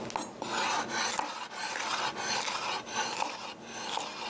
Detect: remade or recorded recorded